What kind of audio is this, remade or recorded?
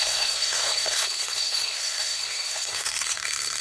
remade